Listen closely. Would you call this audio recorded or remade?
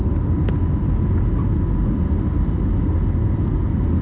recorded